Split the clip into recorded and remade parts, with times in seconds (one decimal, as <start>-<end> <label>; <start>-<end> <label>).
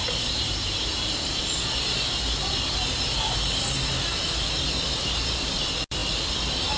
0.0-4.0 remade; 4.0-6.8 recorded